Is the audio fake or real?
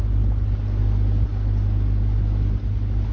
real